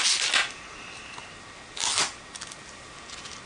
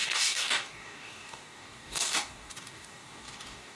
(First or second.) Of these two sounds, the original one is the first